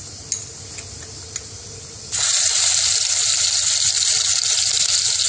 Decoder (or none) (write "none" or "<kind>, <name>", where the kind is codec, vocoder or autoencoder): none